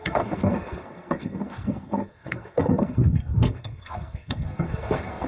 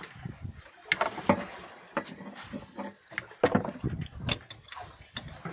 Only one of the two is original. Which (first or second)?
second